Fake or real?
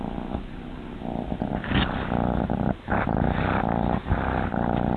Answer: real